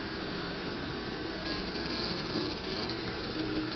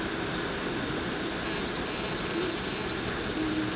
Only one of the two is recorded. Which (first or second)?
second